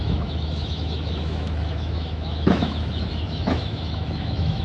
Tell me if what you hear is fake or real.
fake